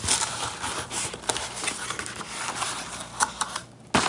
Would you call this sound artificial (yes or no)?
no